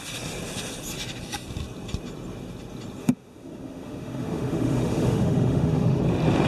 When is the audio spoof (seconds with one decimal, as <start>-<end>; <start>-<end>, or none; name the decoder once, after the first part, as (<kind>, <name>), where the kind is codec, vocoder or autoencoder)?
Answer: 3.0-6.0 (autoencoder, DAC-VAE)